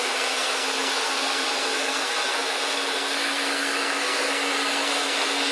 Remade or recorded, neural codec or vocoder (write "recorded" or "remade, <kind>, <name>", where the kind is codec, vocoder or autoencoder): remade, codec, SNAC